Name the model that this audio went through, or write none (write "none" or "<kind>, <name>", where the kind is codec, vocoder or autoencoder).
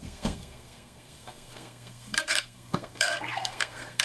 codec, SNAC